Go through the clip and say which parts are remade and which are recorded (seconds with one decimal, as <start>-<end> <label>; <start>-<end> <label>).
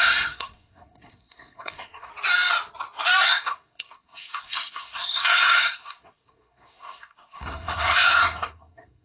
0.0-2.1 remade; 2.1-3.2 recorded; 3.2-9.0 remade